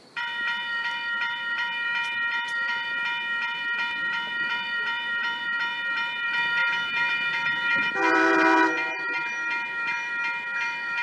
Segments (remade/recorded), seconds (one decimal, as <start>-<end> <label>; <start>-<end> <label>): 0.0-11.0 remade